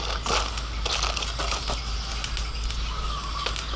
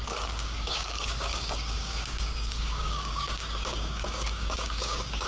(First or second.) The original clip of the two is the first